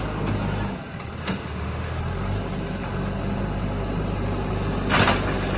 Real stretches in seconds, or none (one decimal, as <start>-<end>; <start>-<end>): 0.0-1.2; 2.0-5.6

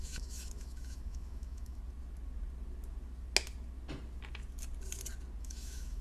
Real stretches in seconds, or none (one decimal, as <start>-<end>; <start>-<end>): 1.8-5.4

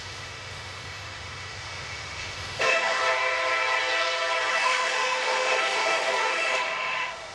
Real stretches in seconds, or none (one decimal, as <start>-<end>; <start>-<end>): 3.0-4.5

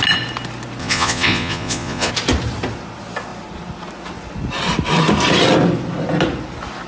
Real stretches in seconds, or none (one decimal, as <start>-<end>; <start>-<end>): 0.0-0.8; 2.1-6.9